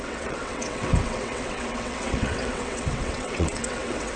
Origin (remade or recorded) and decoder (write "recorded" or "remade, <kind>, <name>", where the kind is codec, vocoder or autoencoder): remade, vocoder, WaveNeXt